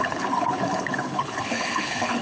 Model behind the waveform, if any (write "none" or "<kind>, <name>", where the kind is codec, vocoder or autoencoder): codec, HILCodec